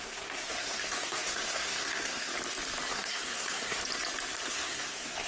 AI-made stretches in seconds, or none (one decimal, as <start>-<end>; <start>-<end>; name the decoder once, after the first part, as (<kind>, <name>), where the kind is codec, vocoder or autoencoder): 0.0-2.3 (codec, SNAC); 2.9-3.8; 4.5-5.3